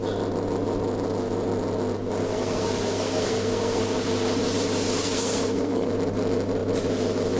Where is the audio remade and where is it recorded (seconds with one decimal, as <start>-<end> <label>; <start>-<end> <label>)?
0.0-2.2 recorded; 2.2-3.8 remade; 3.8-5.0 recorded; 5.0-5.9 remade; 5.9-7.4 recorded